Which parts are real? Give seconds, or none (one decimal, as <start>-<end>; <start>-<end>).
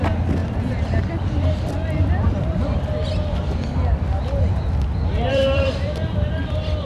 2.5-5.3